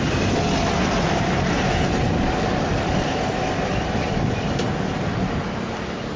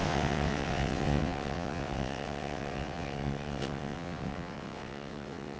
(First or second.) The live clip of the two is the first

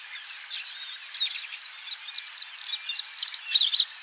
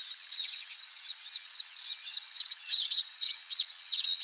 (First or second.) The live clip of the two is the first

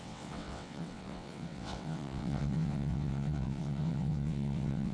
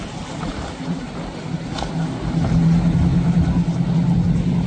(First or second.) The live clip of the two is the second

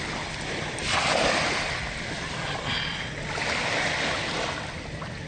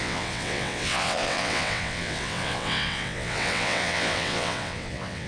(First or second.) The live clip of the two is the first